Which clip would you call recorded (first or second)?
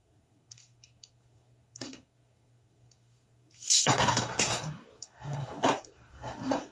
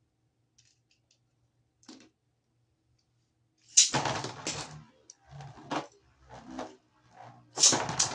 second